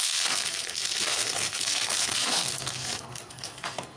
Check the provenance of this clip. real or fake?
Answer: fake